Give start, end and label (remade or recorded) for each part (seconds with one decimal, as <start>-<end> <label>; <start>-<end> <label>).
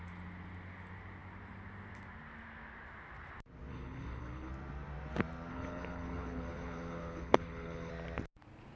0.0-3.7 recorded; 3.7-4.5 remade; 4.5-5.5 recorded; 5.5-7.9 remade; 7.9-8.8 recorded